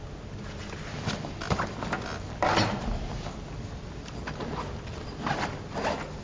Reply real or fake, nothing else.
real